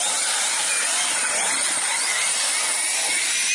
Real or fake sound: real